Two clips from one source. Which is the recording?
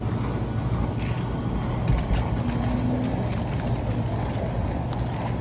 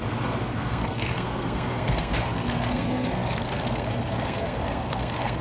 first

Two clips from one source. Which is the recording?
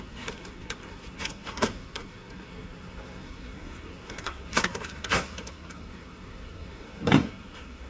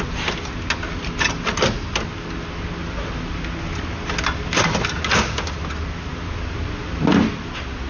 second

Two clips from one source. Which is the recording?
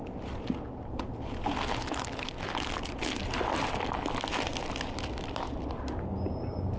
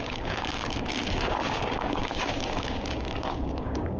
first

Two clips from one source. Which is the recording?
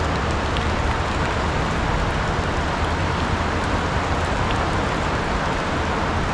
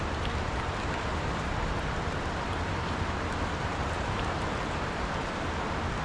first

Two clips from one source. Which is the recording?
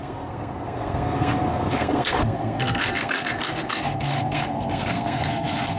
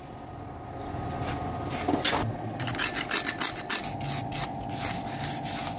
second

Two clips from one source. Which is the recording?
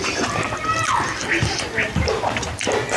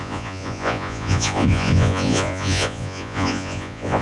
first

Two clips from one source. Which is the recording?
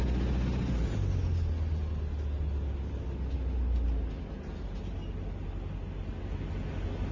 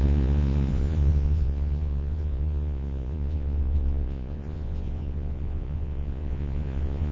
first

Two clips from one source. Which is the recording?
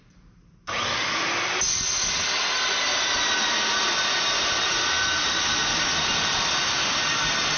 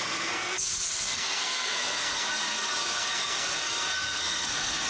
first